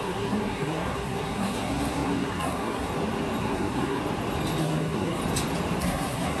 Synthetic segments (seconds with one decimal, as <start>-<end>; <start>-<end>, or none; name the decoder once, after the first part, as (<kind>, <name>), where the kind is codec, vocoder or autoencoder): 0.0-2.9 (codec, SNAC); 3.4-4.0; 4.6-5.2; 5.8-6.4